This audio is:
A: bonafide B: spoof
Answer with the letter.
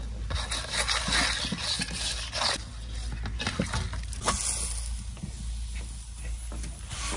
A